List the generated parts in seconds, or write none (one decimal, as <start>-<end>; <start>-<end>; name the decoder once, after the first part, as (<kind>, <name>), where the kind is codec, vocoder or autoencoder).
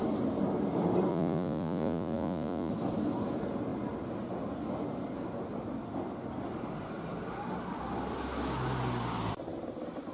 1.1-2.7 (vocoder, Vocos)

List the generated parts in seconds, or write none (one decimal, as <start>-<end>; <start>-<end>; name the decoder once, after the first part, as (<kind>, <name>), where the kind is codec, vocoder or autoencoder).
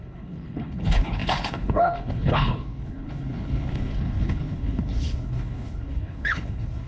0.0-6.9 (codec, HILCodec)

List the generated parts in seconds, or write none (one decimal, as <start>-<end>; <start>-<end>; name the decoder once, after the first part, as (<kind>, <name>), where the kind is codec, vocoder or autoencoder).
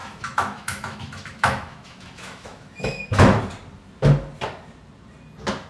0.0-3.4 (autoencoder, DAC-VAE)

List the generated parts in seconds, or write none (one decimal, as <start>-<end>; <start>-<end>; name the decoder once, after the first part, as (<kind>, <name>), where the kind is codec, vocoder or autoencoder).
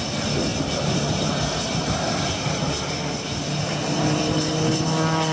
none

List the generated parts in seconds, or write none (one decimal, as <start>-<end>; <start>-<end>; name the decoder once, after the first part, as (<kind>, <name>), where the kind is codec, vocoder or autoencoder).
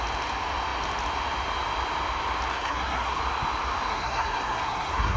2.5-3.2 (codec, SNAC); 3.9-5.2